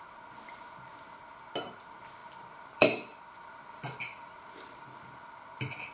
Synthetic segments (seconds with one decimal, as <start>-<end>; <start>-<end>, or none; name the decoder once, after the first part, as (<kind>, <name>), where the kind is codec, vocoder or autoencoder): 2.2-5.9 (vocoder, BigVGAN v2)